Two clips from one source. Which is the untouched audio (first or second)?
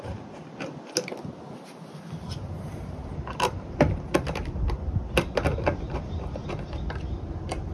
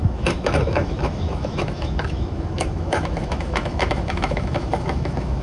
first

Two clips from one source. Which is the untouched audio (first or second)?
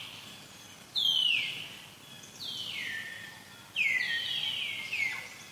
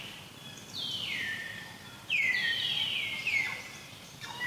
first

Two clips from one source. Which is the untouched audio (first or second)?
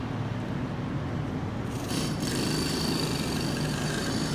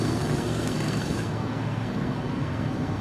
first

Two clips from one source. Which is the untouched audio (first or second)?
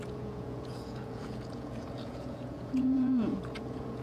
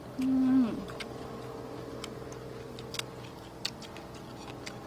second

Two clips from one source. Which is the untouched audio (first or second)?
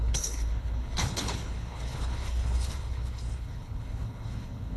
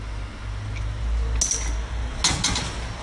second